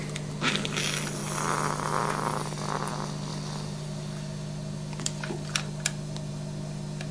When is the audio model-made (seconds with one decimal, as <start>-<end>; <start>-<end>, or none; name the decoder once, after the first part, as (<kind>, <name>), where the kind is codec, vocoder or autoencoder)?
none